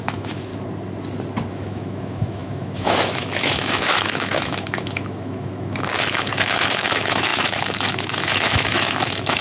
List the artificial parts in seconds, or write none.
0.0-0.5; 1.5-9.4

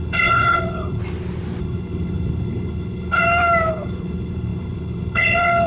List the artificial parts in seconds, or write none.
0.0-1.0; 1.6-3.2; 3.7-5.7

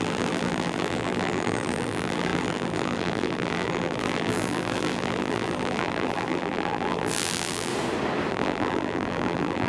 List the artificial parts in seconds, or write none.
0.0-7.7; 8.3-9.7